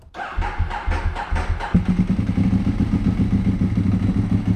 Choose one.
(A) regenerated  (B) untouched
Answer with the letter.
B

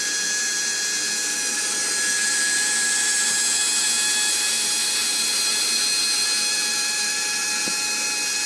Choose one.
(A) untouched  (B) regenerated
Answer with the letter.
A